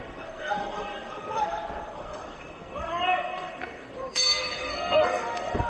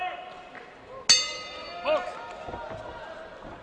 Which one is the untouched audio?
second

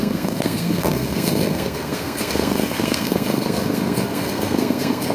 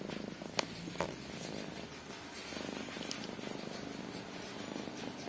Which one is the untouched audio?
second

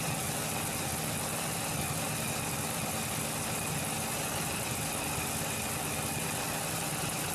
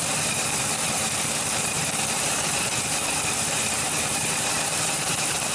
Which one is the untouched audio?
first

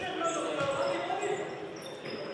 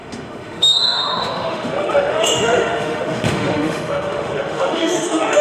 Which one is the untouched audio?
first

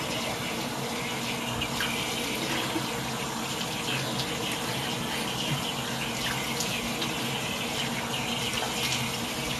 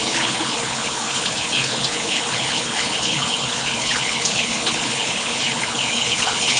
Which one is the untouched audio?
first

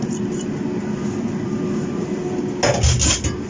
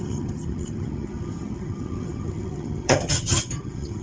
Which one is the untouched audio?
first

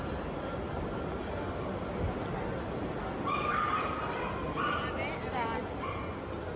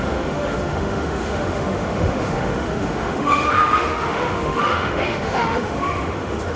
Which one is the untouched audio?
first